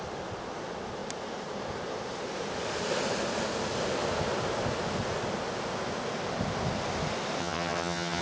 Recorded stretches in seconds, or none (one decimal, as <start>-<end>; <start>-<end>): 0.0-7.4